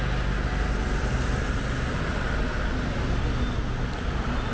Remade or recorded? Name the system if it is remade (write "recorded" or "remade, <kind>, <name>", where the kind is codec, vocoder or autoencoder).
recorded